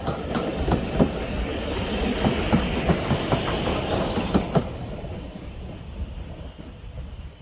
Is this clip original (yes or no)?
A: yes